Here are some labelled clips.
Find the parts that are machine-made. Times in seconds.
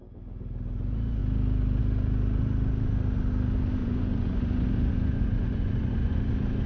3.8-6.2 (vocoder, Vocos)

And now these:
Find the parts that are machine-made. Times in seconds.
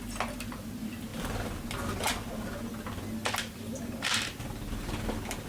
none